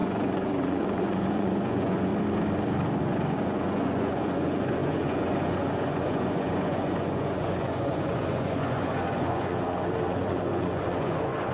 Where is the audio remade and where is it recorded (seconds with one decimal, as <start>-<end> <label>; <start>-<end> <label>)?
0.0-2.1 remade; 2.1-3.0 recorded; 3.0-11.5 remade